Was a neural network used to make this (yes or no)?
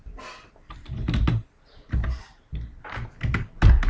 no